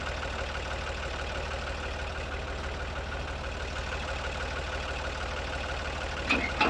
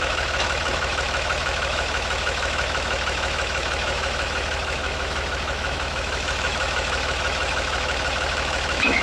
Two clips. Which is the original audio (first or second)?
first